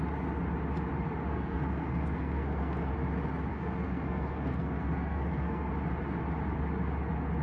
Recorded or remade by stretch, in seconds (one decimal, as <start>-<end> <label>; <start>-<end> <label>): 0.0-1.3 recorded; 1.3-2.9 remade; 2.9-3.5 recorded; 3.5-5.7 remade; 5.7-7.4 recorded